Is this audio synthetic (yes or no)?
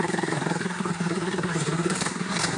yes